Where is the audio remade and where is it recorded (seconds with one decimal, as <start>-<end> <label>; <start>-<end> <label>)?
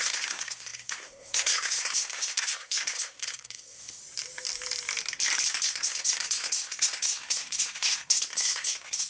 0.0-4.0 remade; 4.0-5.7 recorded; 5.7-9.1 remade